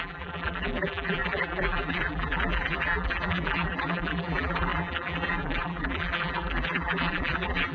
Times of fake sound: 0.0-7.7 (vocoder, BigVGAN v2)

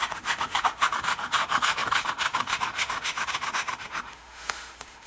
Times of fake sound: 0.0-5.1 (autoencoder, DAC-VAE)

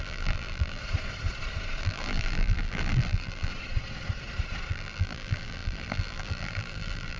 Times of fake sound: 0.0-0.8 (vocoder, BigVGAN v2); 1.8-3.5; 4.7-7.2

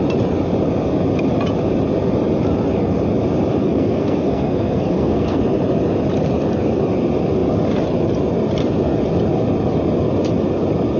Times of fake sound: 3.6-5.4 (codec, SNAC)

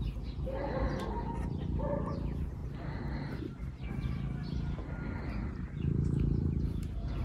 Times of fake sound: none